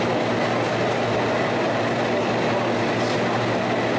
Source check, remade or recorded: recorded